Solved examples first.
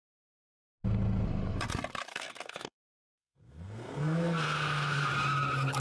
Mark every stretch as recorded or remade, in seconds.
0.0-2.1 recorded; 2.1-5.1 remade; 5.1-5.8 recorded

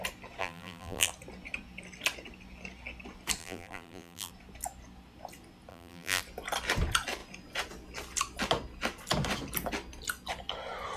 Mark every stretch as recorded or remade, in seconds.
0.0-0.4 recorded; 0.4-1.1 remade; 1.1-3.4 recorded; 3.4-4.3 remade; 4.3-5.7 recorded; 5.7-6.2 remade; 6.2-11.0 recorded

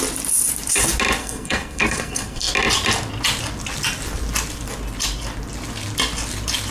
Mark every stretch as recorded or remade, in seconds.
0.0-1.2 recorded; 1.2-2.5 remade; 2.5-6.7 recorded

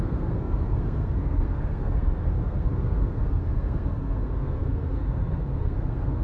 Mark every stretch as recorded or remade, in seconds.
0.0-6.2 remade

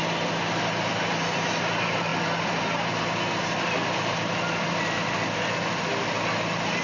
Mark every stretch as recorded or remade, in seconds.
0.0-6.8 recorded

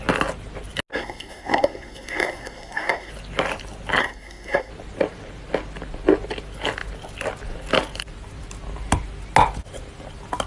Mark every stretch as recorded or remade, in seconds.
0.0-0.9 recorded; 0.9-3.1 remade; 3.1-4.0 recorded; 4.0-4.7 remade; 4.7-10.5 recorded